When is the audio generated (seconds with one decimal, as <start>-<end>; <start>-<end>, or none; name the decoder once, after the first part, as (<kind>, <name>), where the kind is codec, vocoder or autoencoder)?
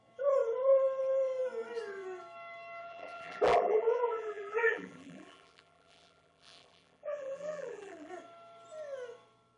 2.8-8.1 (vocoder, BigVGAN v2)